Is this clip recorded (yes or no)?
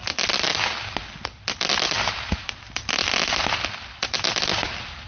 yes